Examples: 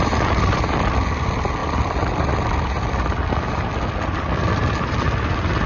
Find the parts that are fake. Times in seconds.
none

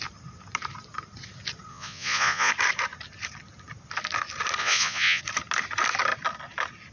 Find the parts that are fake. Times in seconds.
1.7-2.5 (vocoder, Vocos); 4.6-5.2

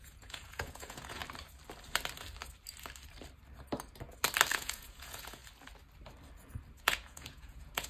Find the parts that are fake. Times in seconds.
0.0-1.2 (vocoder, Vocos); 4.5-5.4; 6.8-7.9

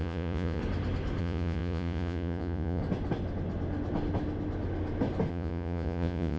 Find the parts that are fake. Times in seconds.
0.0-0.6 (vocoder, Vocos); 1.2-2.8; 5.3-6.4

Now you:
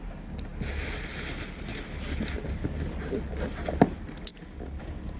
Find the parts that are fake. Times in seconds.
none

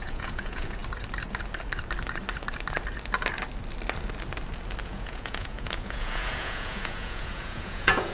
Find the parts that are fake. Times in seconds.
0.0-0.8 (vocoder, Vocos); 4.8-8.1

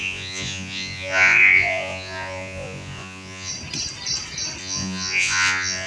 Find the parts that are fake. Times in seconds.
0.0-3.5 (vocoder, Vocos); 4.6-5.9